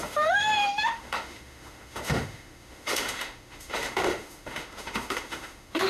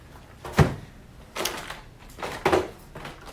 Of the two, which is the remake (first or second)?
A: first